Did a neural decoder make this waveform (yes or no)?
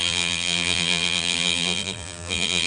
yes